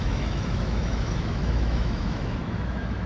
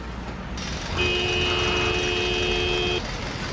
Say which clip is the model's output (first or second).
first